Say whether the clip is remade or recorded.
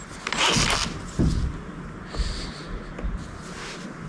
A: recorded